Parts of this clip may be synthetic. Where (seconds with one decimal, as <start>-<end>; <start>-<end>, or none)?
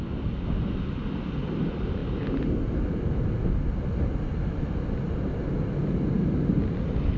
none